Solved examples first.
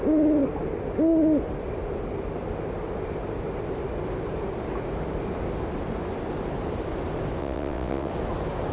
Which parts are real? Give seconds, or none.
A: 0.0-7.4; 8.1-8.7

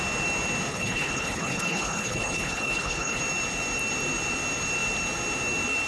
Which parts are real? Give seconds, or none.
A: 0.0-0.7; 3.2-5.9

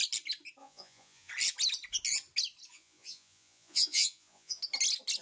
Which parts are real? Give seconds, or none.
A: 0.0-0.6; 1.3-2.7; 4.6-5.2

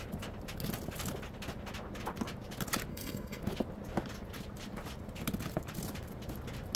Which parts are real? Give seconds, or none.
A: 0.0-2.9; 3.4-6.8